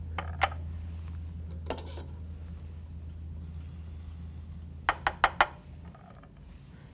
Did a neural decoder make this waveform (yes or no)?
no